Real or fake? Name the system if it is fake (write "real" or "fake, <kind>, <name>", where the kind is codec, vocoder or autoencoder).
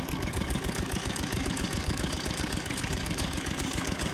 fake, codec, DAC